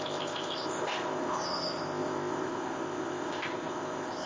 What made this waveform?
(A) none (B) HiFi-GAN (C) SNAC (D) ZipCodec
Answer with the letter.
D